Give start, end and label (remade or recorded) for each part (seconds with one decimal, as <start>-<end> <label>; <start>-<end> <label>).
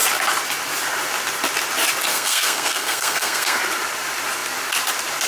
0.0-2.1 recorded; 2.1-3.6 remade; 3.6-5.3 recorded